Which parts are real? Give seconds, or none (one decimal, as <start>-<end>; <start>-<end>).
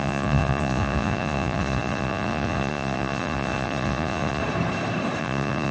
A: 4.4-5.2